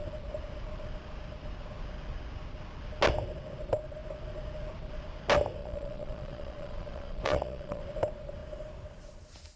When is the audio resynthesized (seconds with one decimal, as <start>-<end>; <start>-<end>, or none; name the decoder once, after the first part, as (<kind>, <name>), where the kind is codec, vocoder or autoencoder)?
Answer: 5.6-7.8 (vocoder, Vocos)